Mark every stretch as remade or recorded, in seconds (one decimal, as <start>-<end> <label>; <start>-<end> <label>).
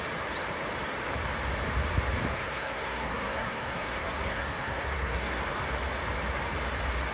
0.0-2.3 recorded; 2.3-5.4 remade; 5.4-7.1 recorded